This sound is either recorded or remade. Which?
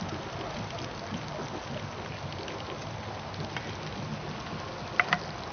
recorded